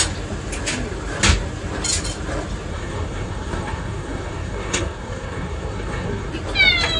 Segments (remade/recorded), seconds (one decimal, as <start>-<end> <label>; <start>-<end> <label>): 0.0-2.7 recorded; 2.7-6.3 remade; 6.3-7.0 recorded